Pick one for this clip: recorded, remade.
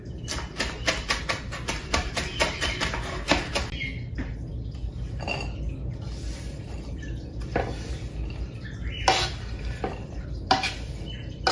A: recorded